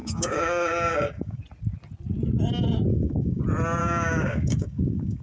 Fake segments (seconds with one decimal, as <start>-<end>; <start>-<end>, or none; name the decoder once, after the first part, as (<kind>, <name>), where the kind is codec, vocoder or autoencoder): 0.0-1.4 (codec, DAC); 2.9-3.4; 3.8-5.2